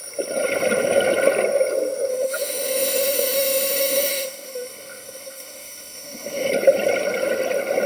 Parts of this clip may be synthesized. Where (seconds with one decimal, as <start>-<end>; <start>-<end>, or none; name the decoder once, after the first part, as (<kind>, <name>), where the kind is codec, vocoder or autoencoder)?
2.1-6.5 (autoencoder, DAC-VAE)